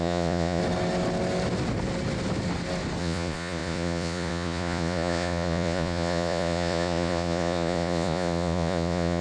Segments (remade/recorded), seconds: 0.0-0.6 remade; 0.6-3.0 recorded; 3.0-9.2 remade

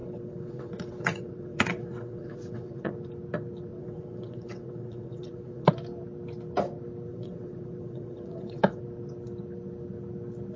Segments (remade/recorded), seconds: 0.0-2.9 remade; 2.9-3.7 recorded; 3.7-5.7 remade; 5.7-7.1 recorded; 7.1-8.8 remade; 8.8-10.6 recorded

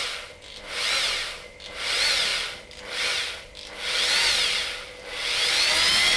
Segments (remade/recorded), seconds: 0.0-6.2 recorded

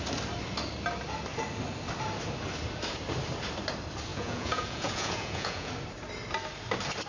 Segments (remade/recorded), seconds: 0.0-4.1 recorded; 4.1-5.7 remade; 5.7-7.1 recorded

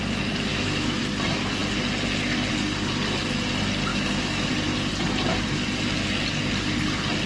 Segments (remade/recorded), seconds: 0.0-0.5 recorded; 0.5-1.0 remade; 1.0-3.9 recorded; 3.9-4.5 remade; 4.5-7.3 recorded